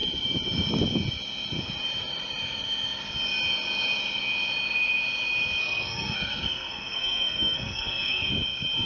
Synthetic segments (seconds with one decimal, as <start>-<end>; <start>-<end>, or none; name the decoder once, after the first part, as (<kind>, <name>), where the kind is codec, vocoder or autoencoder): 5.6-8.3 (codec, SNAC)